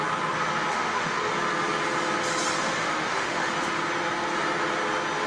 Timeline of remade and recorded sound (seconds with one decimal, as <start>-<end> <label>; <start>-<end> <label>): 0.0-0.7 recorded; 0.7-1.3 remade; 1.3-2.6 recorded; 2.6-3.5 remade; 3.5-5.3 recorded